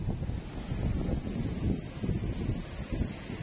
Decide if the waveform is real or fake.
real